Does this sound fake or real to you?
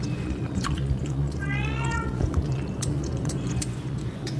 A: fake